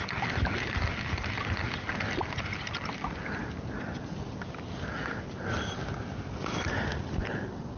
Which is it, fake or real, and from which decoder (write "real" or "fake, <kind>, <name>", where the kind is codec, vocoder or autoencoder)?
real